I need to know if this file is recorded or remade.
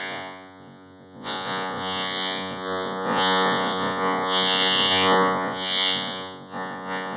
remade